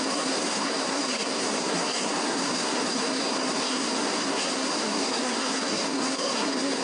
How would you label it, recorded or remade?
remade